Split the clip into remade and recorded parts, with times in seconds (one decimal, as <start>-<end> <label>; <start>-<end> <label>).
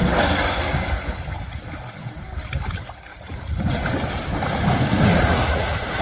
0.0-3.1 recorded; 3.1-3.9 remade; 3.9-5.1 recorded; 5.1-6.0 remade